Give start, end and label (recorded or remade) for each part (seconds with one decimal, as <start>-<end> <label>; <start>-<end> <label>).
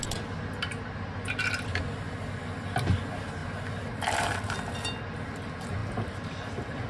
0.0-5.8 recorded; 5.8-6.9 remade